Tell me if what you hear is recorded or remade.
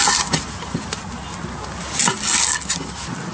recorded